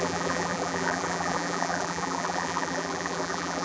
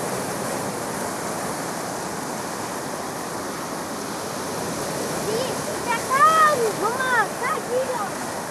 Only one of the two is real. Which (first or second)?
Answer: second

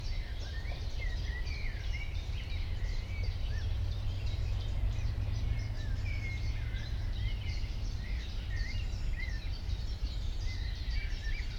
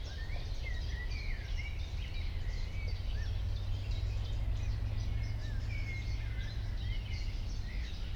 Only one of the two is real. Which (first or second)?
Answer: second